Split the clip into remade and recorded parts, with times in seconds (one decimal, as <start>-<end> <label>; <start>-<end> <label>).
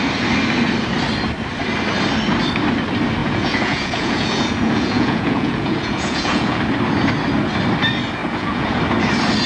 0.0-3.2 recorded; 3.2-6.6 remade; 6.6-8.2 recorded; 8.2-8.8 remade; 8.8-9.5 recorded